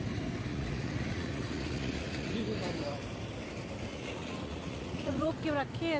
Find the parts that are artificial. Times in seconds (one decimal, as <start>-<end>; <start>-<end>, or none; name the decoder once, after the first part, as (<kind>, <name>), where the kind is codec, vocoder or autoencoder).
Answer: 0.5-2.3 (vocoder, Vocos); 3.9-5.3